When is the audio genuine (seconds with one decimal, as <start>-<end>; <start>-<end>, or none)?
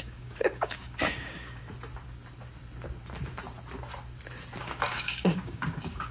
1.6-4.6